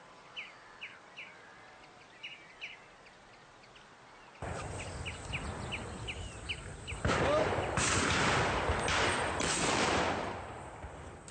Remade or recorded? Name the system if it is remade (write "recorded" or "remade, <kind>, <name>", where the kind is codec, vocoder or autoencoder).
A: recorded